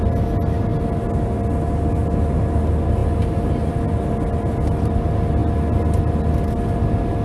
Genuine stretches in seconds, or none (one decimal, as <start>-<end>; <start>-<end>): 0.0-7.2